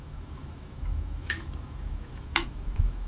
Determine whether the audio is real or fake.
fake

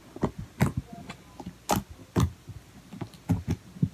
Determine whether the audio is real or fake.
real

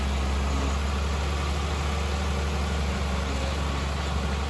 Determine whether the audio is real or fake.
real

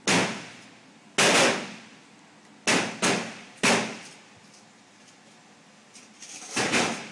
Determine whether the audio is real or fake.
real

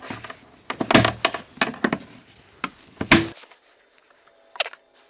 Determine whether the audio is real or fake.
real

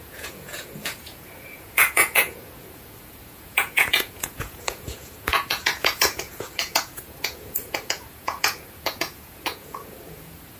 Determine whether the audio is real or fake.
fake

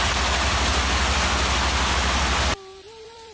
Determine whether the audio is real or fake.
fake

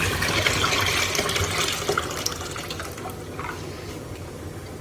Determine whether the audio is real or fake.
real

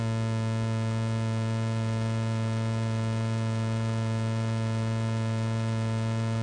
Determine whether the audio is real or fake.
real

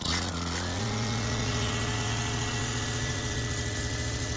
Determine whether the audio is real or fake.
fake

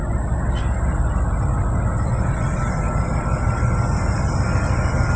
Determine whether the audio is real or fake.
real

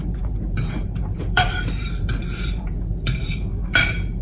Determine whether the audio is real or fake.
fake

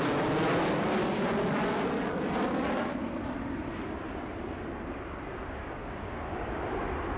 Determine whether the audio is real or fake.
real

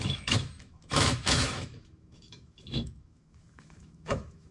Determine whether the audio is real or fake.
fake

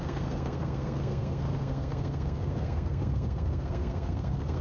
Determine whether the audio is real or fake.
fake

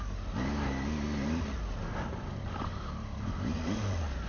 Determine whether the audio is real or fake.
real